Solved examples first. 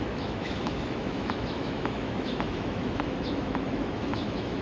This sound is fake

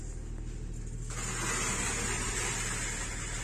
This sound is real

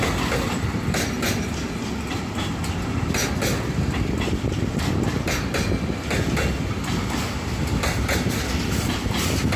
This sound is real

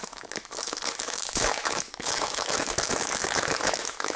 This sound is fake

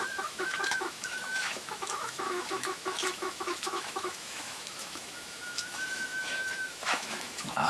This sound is fake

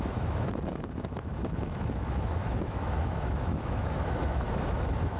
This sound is fake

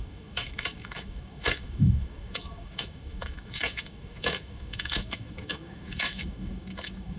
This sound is fake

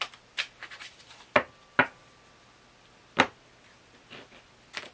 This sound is real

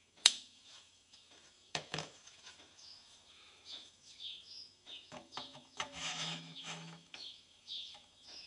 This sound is fake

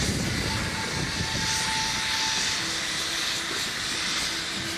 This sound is real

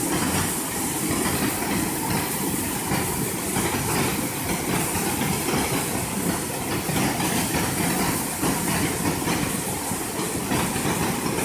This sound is real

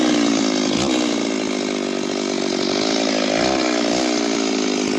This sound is real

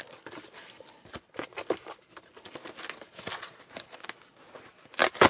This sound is real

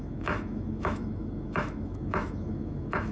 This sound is fake